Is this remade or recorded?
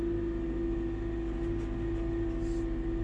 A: recorded